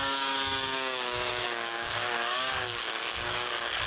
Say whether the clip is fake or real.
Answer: fake